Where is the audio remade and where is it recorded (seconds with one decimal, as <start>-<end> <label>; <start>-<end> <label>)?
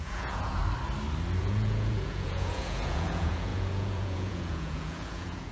0.0-0.6 remade; 0.6-1.4 recorded; 1.4-5.5 remade